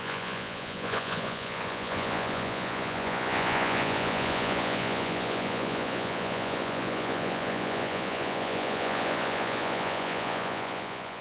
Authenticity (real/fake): fake